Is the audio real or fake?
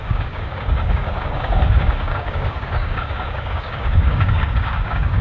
fake